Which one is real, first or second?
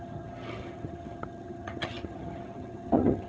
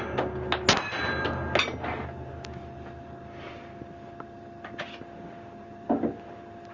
second